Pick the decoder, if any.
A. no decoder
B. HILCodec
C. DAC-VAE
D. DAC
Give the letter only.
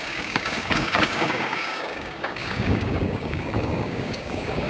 D